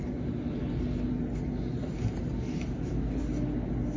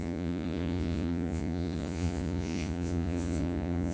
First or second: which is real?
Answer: first